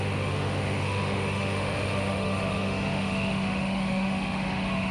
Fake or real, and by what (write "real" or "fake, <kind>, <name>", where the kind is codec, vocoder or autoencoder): fake, autoencoder, DAC-VAE